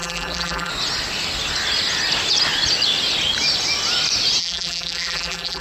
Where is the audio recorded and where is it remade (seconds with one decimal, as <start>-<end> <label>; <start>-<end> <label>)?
0.0-0.7 remade; 0.7-4.4 recorded; 4.4-5.6 remade